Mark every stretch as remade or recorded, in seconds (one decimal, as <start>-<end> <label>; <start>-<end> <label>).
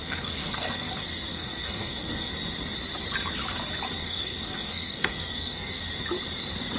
0.0-0.9 remade; 0.9-1.3 recorded; 1.3-2.3 remade; 2.3-4.0 recorded; 4.0-5.8 remade; 5.8-6.8 recorded